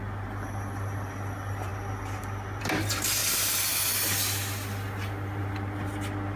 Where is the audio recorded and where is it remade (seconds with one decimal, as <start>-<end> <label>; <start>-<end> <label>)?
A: 0.0-6.4 recorded

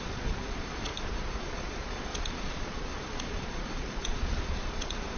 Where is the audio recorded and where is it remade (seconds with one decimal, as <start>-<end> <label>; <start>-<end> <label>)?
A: 0.0-0.9 remade; 0.9-1.4 recorded; 1.4-5.2 remade